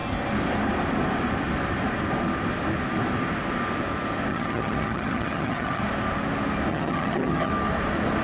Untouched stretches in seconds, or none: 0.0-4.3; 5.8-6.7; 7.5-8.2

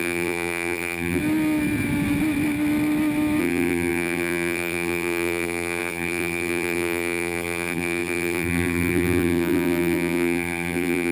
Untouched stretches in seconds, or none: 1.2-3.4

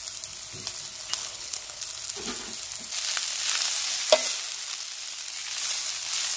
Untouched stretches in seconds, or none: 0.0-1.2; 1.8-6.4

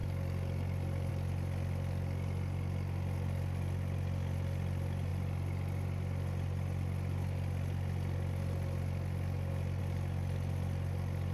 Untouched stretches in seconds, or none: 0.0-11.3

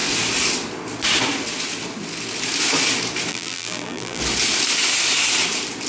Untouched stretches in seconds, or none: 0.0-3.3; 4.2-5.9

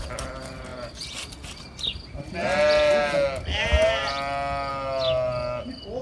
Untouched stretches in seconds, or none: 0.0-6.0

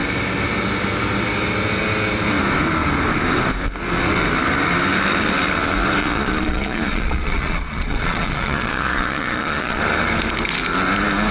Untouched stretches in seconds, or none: 0.0-6.0; 9.8-11.3

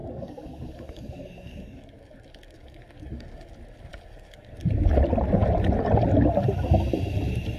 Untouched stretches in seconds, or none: 3.5-3.9; 4.7-7.6